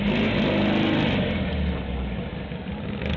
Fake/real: real